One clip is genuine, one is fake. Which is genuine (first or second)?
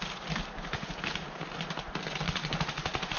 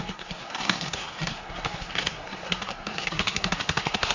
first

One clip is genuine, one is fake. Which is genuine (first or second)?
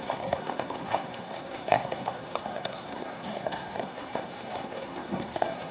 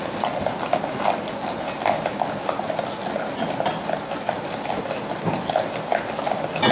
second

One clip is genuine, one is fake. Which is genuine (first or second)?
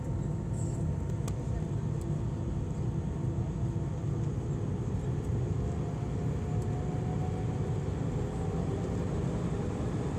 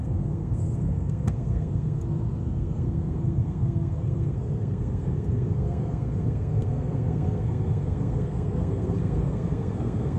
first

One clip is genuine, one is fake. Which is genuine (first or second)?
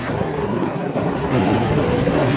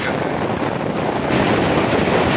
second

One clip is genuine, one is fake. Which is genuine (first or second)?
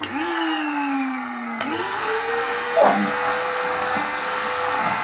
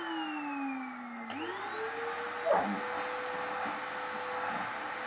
second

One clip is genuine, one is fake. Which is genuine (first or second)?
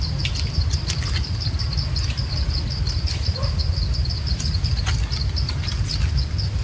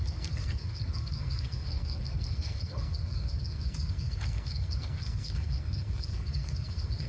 first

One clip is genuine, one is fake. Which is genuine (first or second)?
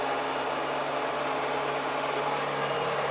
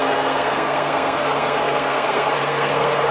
first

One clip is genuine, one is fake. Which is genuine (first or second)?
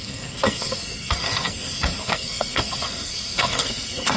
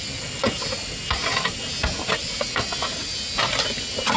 second